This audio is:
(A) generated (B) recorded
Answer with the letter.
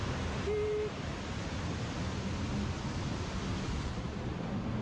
B